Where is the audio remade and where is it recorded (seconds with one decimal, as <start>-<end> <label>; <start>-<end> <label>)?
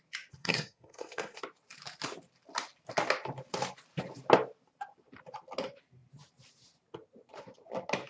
0.0-0.4 recorded; 0.4-1.4 remade; 1.4-8.1 recorded